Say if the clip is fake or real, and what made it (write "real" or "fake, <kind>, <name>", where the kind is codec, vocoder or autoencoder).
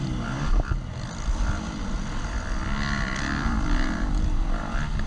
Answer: real